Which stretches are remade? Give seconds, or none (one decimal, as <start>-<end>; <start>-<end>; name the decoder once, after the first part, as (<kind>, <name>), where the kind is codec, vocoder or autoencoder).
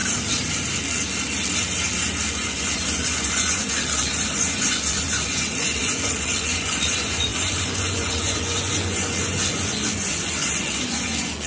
2.3-11.5 (vocoder, Vocos)